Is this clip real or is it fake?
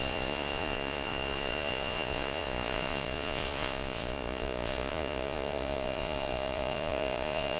fake